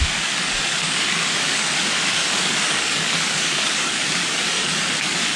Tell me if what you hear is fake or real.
fake